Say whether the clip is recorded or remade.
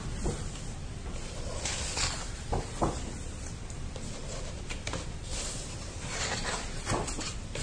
remade